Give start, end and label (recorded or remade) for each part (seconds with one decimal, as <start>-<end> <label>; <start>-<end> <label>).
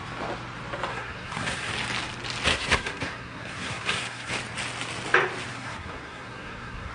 0.0-0.9 recorded; 0.9-1.7 remade; 1.7-2.5 recorded; 2.5-4.3 remade; 4.3-5.5 recorded; 5.5-6.9 remade